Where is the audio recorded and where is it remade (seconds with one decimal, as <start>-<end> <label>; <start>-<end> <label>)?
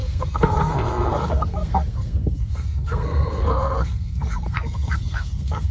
0.0-5.7 remade